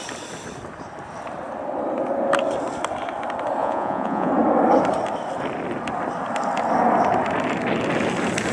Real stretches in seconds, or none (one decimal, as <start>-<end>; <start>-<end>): 0.0-3.6; 4.3-8.5